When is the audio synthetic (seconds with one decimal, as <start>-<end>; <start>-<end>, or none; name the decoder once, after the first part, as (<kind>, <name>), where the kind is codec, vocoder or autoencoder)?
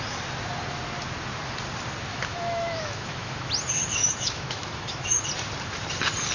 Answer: 2.1-3.5 (autoencoder, DAC-VAE); 4.0-5.2